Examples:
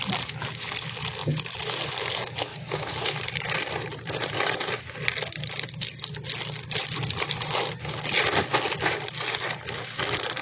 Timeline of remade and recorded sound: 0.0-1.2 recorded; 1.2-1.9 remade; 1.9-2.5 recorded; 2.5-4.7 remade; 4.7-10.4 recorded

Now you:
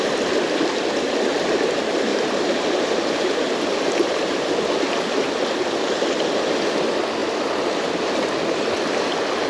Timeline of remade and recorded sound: 0.0-2.1 recorded; 2.1-4.5 remade; 4.5-9.5 recorded